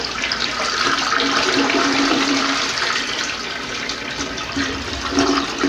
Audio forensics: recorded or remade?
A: remade